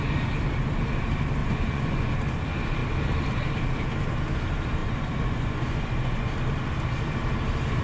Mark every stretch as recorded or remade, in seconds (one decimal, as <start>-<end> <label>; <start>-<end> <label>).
0.0-1.4 recorded; 1.4-2.1 remade; 2.1-4.8 recorded; 4.8-6.3 remade; 6.3-7.8 recorded

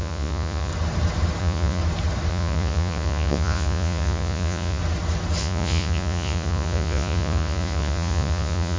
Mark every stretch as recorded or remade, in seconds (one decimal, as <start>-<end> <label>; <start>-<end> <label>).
0.0-0.7 remade; 0.7-1.4 recorded; 1.4-1.8 remade; 1.8-2.3 recorded; 2.3-4.8 remade; 4.8-5.4 recorded; 5.4-8.8 remade

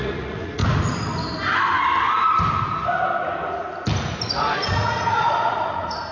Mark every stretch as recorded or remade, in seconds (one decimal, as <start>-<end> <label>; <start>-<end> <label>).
0.0-0.6 remade; 0.6-4.3 recorded; 4.3-6.1 remade